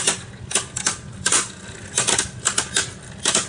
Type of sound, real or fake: real